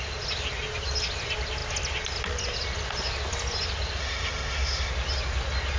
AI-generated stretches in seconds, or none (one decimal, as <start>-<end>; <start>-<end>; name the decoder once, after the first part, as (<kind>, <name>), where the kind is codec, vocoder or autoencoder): 4.0-4.9 (autoencoder, DAC-VAE)